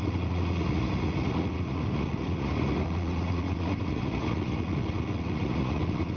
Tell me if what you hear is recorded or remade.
remade